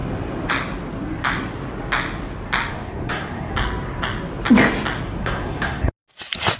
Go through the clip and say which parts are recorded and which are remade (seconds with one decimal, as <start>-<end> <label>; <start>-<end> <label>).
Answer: 0.0-2.7 recorded; 2.7-3.5 remade; 3.5-5.2 recorded; 5.2-5.9 remade; 5.9-6.6 recorded